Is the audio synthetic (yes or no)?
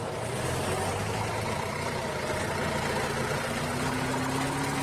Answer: no